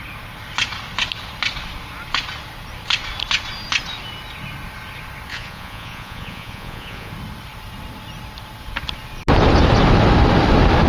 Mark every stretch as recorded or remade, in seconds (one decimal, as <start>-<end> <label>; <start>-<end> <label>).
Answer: 0.0-5.3 recorded; 5.3-7.1 remade; 7.1-10.9 recorded